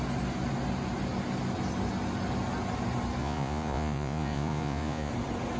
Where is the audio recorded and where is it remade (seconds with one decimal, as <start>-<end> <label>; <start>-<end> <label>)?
0.0-3.2 recorded; 3.2-5.1 remade; 5.1-5.6 recorded